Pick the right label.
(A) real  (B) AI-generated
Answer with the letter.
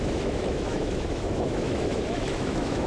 B